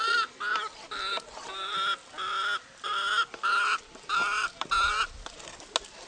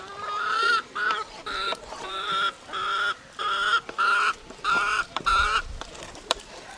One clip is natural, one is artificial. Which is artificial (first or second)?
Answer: second